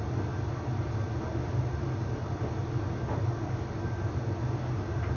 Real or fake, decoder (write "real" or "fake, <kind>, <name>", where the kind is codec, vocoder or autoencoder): real